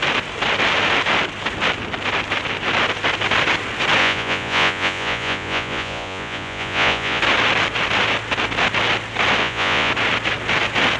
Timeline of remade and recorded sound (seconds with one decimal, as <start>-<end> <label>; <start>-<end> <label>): 0.0-4.0 recorded; 4.0-7.2 remade; 7.2-9.4 recorded; 9.4-9.9 remade; 9.9-11.0 recorded